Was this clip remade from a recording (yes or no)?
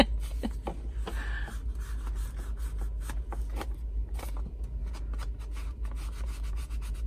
no